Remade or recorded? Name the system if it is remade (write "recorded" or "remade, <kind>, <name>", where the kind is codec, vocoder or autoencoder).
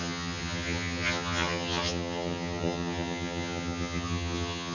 remade, vocoder, HiFi-GAN